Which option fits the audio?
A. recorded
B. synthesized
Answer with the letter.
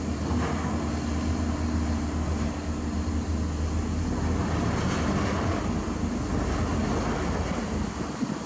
A